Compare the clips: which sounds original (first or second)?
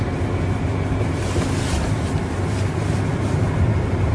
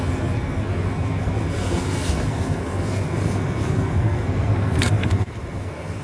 first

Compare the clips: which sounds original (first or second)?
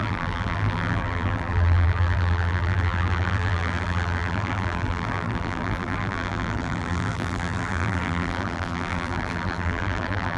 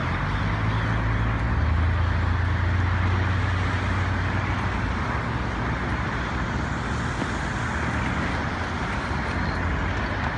second